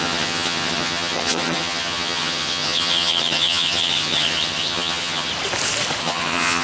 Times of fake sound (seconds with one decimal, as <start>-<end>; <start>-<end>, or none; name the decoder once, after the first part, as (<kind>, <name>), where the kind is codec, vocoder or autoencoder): 0.0-5.3 (vocoder, HiFi-GAN); 6.0-6.6